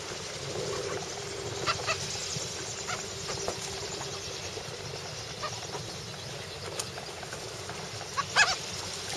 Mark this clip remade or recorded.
recorded